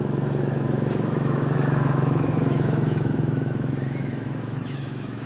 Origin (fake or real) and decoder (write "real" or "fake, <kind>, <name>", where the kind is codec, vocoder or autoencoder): fake, autoencoder, DAC-VAE